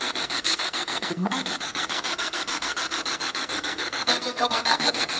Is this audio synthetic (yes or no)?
yes